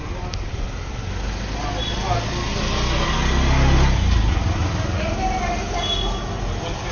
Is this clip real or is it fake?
real